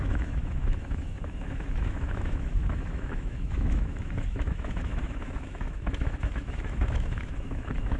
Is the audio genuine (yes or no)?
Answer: no